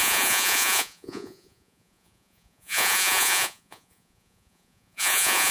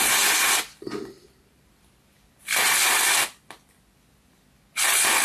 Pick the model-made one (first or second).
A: first